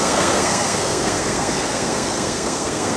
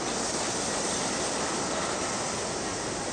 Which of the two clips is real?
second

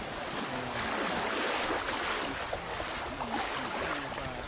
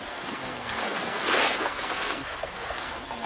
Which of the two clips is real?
first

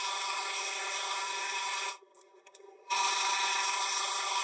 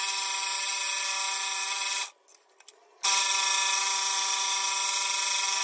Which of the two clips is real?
second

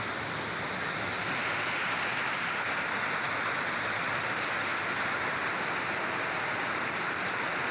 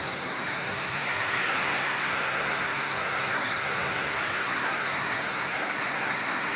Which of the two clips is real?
first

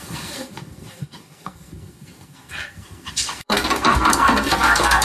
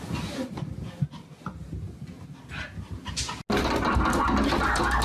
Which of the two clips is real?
second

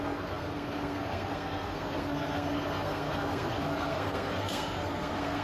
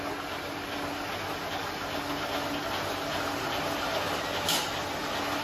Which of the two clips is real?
second